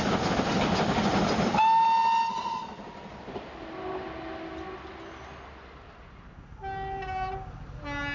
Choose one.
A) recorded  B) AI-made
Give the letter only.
A